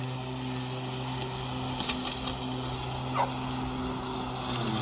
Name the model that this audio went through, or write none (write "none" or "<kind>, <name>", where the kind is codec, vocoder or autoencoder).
none